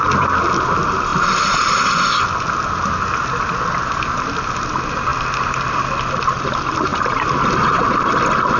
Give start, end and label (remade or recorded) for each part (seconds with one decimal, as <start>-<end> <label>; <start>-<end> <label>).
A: 0.0-1.1 recorded; 1.1-1.8 remade; 1.8-5.1 recorded; 5.1-6.3 remade; 6.3-6.9 recorded; 6.9-7.7 remade; 7.7-8.6 recorded